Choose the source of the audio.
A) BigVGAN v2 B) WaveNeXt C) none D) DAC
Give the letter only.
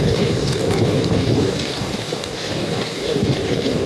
D